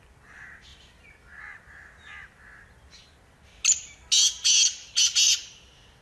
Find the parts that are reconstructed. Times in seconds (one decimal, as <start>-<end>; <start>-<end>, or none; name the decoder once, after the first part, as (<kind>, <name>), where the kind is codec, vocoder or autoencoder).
none